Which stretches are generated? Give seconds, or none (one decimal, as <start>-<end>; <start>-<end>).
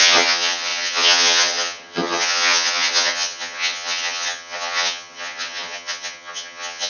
0.0-6.9